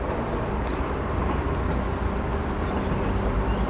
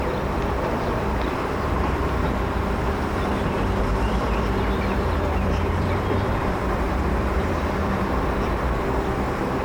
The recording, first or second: first